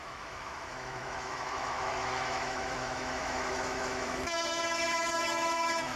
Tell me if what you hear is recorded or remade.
remade